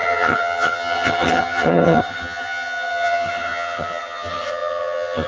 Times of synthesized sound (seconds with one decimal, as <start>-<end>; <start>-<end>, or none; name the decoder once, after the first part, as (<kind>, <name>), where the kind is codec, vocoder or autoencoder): 0.0-5.3 (vocoder, HiFi-GAN)